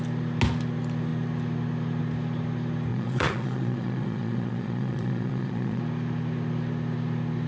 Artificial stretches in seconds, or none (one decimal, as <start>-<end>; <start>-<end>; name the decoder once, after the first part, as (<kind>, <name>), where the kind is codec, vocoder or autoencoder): 2.9-5.8 (vocoder, Vocos)